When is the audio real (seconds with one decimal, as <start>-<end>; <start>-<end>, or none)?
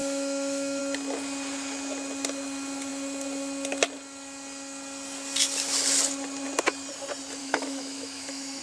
0.8-7.4